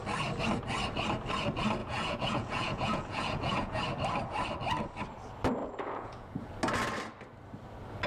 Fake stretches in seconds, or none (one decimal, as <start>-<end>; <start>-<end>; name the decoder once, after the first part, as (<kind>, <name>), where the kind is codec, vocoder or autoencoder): 1.8-3.8 (vocoder, Vocos); 5.6-6.5